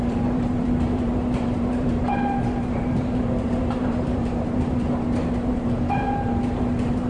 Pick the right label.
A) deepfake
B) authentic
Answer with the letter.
A